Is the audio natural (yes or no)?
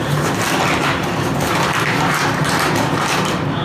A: no